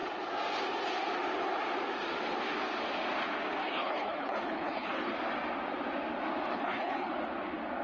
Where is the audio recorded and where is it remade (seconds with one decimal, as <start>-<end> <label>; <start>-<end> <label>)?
0.0-3.6 recorded; 3.6-5.1 remade; 5.1-6.5 recorded; 6.5-7.1 remade; 7.1-7.8 recorded